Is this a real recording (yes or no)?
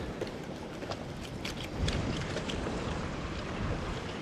no